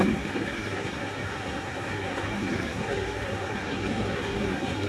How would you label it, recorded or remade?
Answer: remade